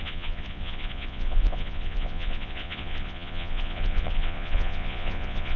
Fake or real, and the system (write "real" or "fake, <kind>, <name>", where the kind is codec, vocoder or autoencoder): fake, vocoder, Vocos